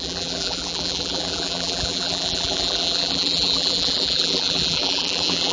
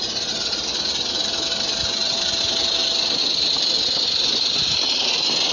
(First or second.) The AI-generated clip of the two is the first